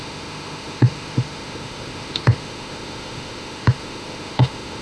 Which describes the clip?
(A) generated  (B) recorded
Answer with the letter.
A